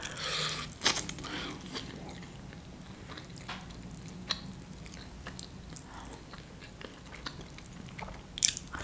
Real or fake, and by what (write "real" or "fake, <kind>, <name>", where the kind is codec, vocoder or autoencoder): real